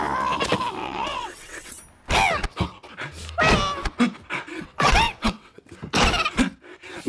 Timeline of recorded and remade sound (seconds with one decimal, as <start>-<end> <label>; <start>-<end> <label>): 0.0-0.8 recorded; 0.8-1.7 remade; 1.7-4.5 recorded; 4.5-5.6 remade; 5.6-7.1 recorded